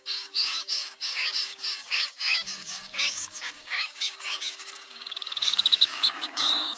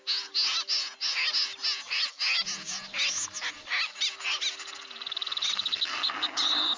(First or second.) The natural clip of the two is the second